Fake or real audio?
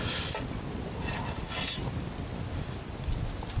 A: real